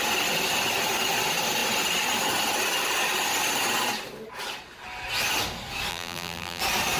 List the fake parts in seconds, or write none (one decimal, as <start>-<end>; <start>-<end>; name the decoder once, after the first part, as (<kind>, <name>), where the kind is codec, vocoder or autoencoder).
5.9-6.6 (vocoder, BigVGAN v2)